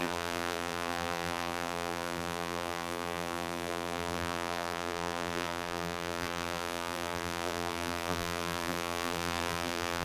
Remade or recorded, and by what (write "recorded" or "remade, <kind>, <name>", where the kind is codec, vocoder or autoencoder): remade, vocoder, BigVGAN v2